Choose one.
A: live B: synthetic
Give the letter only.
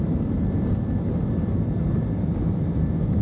A